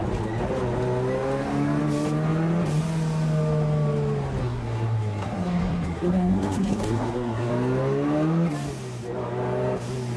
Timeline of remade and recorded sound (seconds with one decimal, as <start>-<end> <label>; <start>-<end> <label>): 0.0-4.4 recorded; 4.4-7.5 remade; 7.5-10.2 recorded

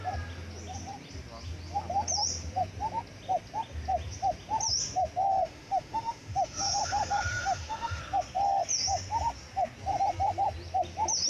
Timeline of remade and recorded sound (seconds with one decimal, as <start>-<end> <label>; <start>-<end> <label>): 0.0-5.3 recorded; 5.3-8.0 remade; 8.0-11.3 recorded

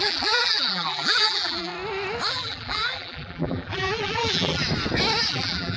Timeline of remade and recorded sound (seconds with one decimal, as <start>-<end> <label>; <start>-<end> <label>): 0.0-1.7 remade; 1.7-2.3 recorded; 2.3-4.6 remade; 4.6-5.3 recorded; 5.3-5.8 remade

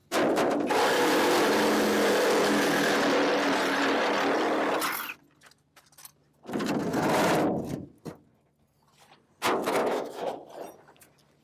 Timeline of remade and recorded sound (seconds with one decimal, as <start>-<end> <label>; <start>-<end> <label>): 0.0-9.8 recorded; 9.8-10.3 remade; 10.3-11.4 recorded

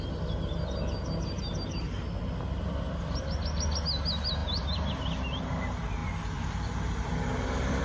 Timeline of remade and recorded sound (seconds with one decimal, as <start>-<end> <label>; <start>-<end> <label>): 0.0-4.4 recorded; 4.4-4.9 remade; 4.9-6.0 recorded; 6.0-7.8 remade

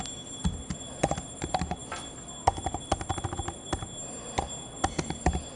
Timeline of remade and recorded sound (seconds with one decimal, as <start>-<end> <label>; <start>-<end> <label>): 0.0-5.5 recorded

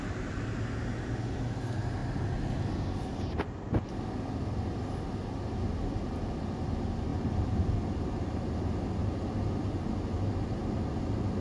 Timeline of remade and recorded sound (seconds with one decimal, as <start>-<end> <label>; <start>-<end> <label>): 0.0-7.1 recorded; 7.1-7.7 remade; 7.7-9.0 recorded; 9.0-9.9 remade; 9.9-11.4 recorded